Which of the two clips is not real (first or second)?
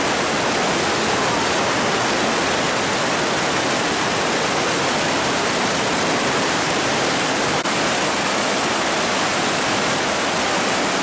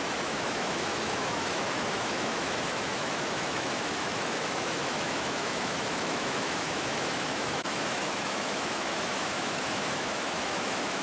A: second